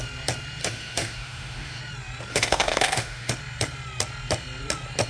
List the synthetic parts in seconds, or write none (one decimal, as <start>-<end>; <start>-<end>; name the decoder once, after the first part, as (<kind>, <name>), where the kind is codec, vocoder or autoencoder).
0.6-1.8 (autoencoder, DAC-VAE); 2.3-3.3